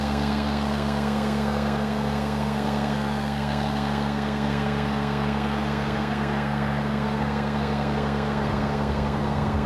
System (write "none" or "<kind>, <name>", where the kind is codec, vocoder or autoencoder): codec, SNAC